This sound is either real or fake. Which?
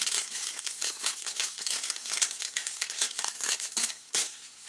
fake